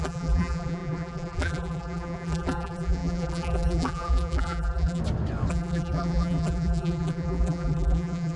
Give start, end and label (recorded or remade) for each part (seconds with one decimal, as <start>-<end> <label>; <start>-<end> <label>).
0.0-5.0 remade; 5.0-5.5 recorded; 5.5-8.4 remade

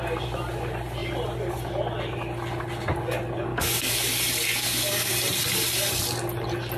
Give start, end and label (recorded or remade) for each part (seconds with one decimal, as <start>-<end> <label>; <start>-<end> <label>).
0.0-3.5 recorded; 3.5-4.1 remade; 4.1-4.6 recorded; 4.6-5.1 remade; 5.1-6.8 recorded

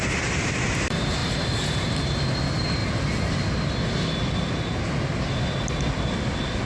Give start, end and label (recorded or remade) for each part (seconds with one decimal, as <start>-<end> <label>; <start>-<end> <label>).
0.0-2.8 remade; 2.8-6.7 recorded

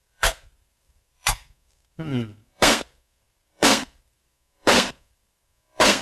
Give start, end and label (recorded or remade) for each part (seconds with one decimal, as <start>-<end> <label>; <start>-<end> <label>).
0.0-6.0 remade

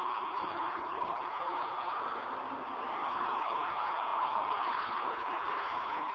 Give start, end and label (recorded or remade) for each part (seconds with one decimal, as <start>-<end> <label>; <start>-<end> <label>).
0.0-2.0 remade; 2.0-2.9 recorded; 2.9-6.1 remade

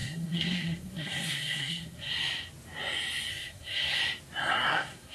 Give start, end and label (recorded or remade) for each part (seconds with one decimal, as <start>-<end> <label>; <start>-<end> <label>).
0.0-2.1 remade; 2.1-3.3 recorded; 3.3-4.0 remade; 4.0-4.5 recorded; 4.5-5.1 remade

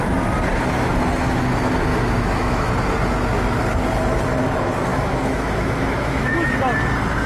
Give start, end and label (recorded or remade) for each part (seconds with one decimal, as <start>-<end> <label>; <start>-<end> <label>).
0.0-1.9 recorded; 1.9-2.7 remade; 2.7-4.9 recorded; 4.9-6.5 remade; 6.5-7.3 recorded